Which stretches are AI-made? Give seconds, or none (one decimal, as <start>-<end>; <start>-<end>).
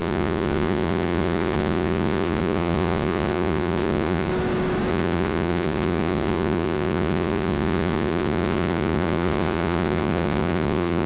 0.0-4.3; 4.9-11.1